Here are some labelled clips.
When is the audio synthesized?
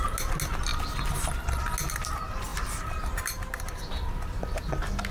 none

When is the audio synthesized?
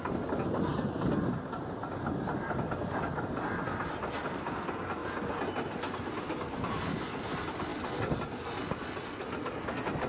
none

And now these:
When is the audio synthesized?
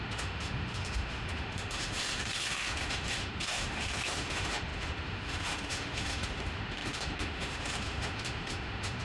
0.0-9.0 (autoencoder, DAC-VAE)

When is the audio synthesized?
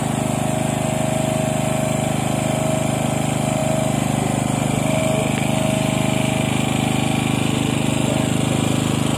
none